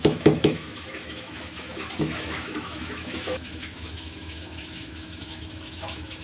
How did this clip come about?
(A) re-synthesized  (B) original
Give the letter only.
A